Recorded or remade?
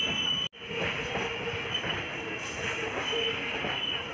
recorded